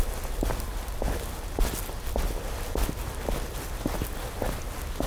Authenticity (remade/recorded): recorded